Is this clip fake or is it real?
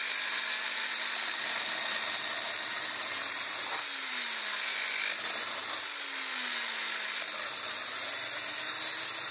real